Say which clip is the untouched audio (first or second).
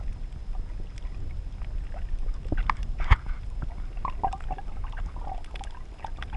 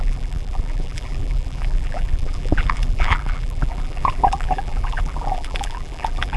first